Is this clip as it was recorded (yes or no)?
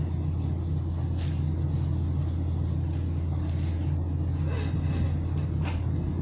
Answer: yes